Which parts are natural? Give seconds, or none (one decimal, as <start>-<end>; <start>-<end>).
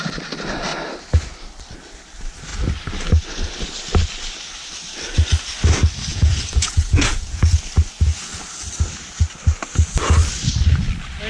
0.0-6.1; 7.6-11.3